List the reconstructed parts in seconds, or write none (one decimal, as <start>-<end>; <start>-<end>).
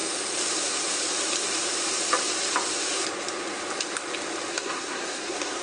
4.5-5.6